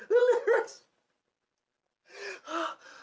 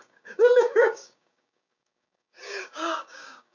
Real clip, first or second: first